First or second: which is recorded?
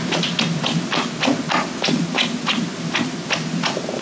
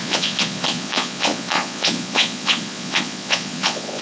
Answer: first